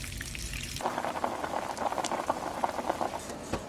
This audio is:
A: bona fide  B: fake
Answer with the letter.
B